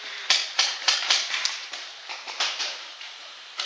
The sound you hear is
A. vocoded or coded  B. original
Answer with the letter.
A